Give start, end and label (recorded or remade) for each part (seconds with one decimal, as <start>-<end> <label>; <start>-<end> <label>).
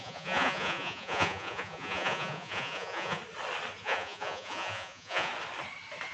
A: 0.0-3.2 remade; 3.2-3.8 recorded; 3.8-5.3 remade; 5.3-6.1 recorded